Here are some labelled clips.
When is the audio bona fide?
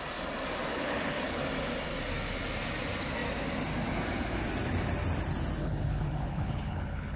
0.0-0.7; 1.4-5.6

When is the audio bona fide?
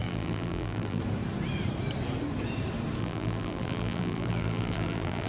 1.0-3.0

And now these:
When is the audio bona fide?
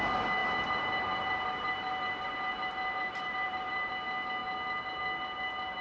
0.0-0.4; 3.9-5.8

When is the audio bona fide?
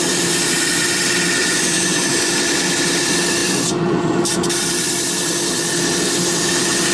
0.0-1.4; 2.3-3.4; 4.2-6.9